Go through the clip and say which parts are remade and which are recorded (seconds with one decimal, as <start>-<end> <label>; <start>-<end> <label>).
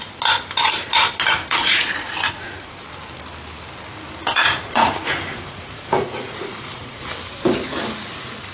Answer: 0.0-1.4 recorded; 1.4-2.8 remade; 2.8-4.2 recorded; 4.2-7.1 remade; 7.1-8.5 recorded